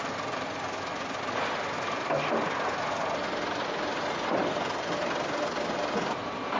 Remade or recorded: recorded